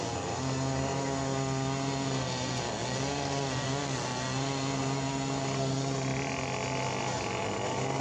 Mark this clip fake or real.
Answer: real